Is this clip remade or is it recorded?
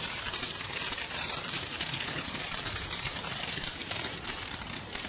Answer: remade